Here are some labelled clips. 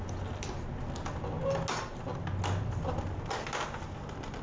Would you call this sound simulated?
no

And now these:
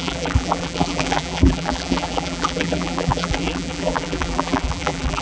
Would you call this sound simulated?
yes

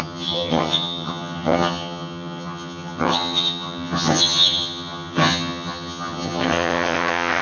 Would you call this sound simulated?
yes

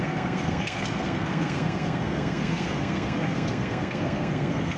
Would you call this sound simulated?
yes